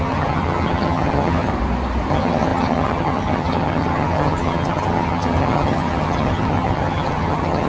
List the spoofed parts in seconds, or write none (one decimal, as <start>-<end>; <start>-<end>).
0.0-1.5; 2.1-7.7